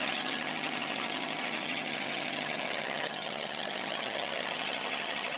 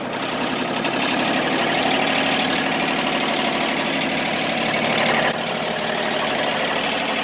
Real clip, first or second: second